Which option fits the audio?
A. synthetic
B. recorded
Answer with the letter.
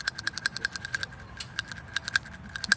B